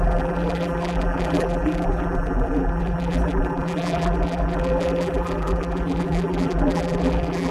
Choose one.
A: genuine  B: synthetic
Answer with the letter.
B